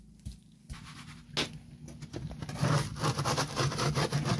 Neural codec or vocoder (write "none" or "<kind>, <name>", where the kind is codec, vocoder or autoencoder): none